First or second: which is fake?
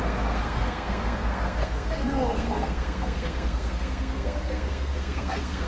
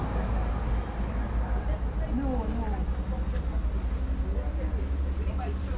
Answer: first